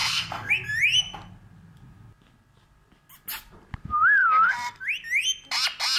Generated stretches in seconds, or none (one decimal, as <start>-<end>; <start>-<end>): 0.0-0.5; 4.2-4.8